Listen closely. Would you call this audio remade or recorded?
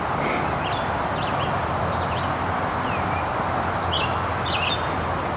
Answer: recorded